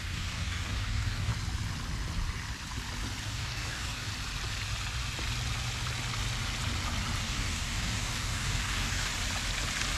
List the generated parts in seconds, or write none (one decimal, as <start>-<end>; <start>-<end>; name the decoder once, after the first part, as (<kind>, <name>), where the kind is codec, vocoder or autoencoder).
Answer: 0.0-1.3 (codec, DAC); 3.2-4.1; 7.2-9.1